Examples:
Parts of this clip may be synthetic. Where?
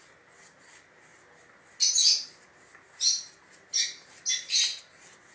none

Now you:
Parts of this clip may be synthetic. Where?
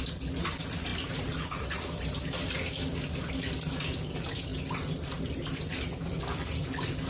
0.9-2.2 (vocoder, BigVGAN v2)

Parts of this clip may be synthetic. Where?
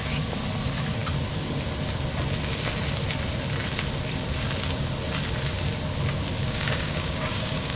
6.4-7.8 (codec, DAC)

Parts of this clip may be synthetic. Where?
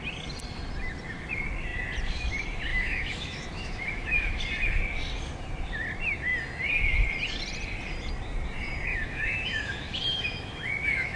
2.7-4.4 (autoencoder, DAC-VAE); 8.9-11.2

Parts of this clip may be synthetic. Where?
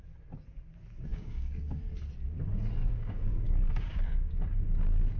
1.1-1.8 (codec, DAC); 2.8-4.3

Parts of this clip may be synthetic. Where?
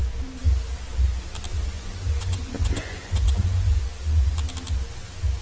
1.5-3.8 (vocoder, Vocos)